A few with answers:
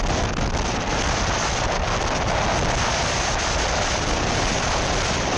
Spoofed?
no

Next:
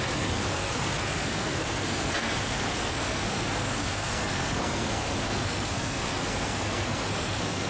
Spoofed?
yes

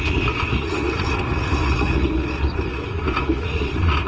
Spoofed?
yes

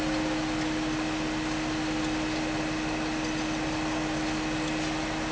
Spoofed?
no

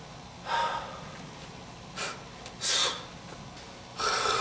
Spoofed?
no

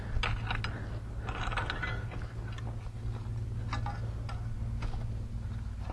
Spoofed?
no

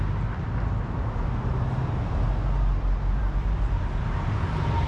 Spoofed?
no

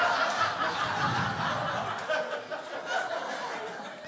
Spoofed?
no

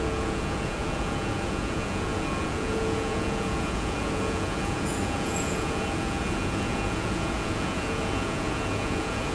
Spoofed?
yes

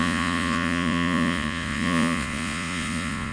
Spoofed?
yes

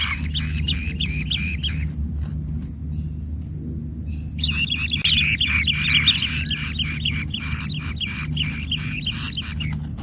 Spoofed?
no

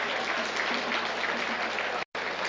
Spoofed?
no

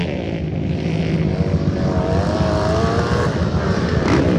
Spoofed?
no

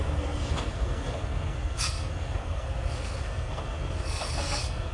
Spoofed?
yes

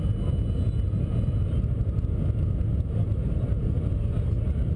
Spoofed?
no